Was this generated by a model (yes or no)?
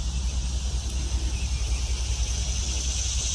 no